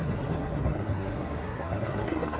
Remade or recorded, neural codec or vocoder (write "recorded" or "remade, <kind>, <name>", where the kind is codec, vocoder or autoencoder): remade, codec, SNAC